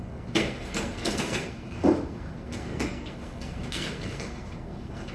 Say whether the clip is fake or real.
fake